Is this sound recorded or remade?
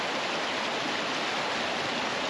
recorded